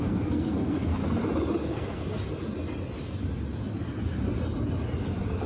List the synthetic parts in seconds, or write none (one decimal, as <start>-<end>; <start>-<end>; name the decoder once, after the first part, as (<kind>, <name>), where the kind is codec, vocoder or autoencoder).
0.0-1.0 (codec, SNAC); 1.6-2.0